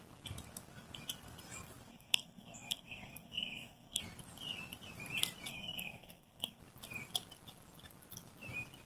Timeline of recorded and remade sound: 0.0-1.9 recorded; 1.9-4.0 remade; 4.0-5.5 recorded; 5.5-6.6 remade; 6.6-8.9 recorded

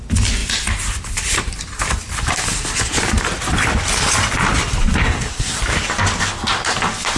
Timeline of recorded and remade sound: 0.0-5.0 recorded; 5.0-5.6 remade; 5.6-7.2 recorded

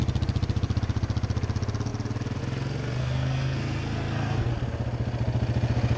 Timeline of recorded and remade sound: 0.0-3.0 recorded; 3.0-4.5 remade; 4.5-6.0 recorded

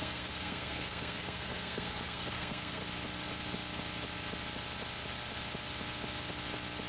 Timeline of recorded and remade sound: 0.0-2.8 remade; 2.8-6.9 recorded

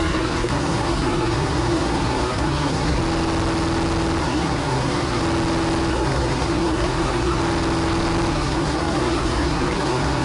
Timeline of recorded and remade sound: 0.0-3.0 remade; 3.0-4.2 recorded; 4.2-5.2 remade; 5.2-5.9 recorded; 5.9-7.4 remade; 7.4-8.3 recorded; 8.3-10.2 remade

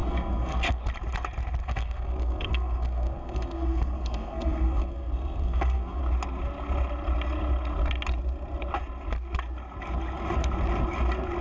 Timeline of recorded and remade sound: 0.0-0.8 remade; 0.8-1.6 recorded; 1.6-6.0 remade; 6.0-11.4 recorded